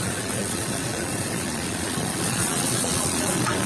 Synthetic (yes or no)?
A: yes